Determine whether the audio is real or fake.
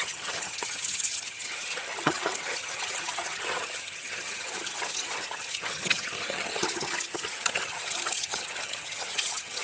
fake